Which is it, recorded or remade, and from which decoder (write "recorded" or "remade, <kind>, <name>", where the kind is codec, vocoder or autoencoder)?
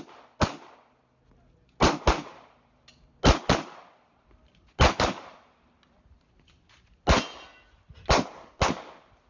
recorded